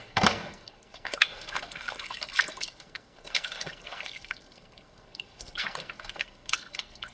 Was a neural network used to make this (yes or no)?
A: yes